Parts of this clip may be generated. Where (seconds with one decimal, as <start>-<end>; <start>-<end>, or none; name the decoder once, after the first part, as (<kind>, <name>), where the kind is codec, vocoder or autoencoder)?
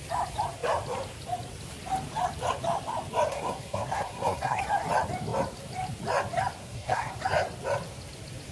3.3-4.6 (codec, SNAC); 6.6-7.1